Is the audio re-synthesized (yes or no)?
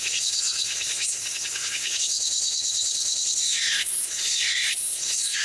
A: yes